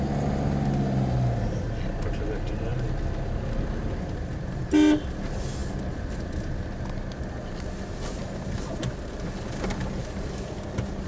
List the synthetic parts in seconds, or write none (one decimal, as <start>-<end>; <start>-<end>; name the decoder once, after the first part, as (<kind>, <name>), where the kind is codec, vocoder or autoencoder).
none